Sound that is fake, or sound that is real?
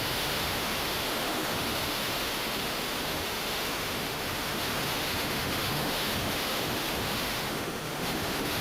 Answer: fake